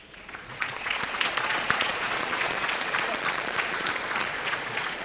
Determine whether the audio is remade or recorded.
remade